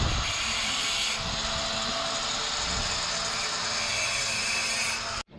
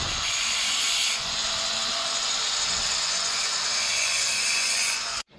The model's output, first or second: second